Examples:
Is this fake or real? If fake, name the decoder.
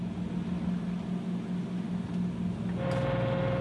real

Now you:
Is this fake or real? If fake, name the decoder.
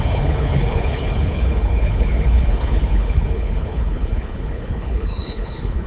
fake, codec, HILCodec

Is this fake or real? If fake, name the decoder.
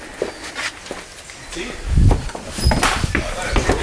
real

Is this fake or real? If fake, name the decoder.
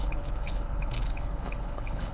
fake, codec, HILCodec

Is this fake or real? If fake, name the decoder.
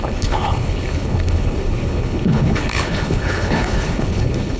fake, codec, HILCodec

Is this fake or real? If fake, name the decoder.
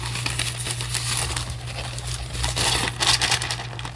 real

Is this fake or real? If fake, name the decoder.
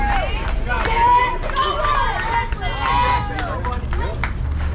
real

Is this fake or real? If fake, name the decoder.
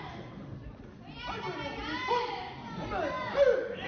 real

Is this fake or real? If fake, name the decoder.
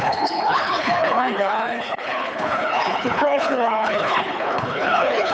fake, codec, HILCodec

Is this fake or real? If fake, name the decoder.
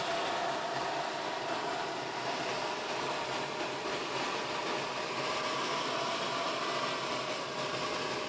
real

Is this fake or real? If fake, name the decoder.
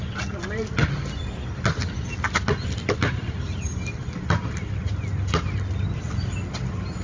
real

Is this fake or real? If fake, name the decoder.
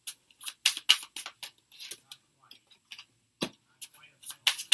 real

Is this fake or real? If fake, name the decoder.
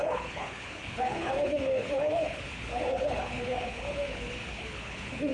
fake, codec, HILCodec